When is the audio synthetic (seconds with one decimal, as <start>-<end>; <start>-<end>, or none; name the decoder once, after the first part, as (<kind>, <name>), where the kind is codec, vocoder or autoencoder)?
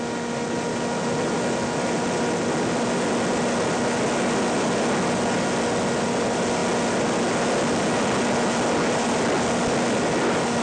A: none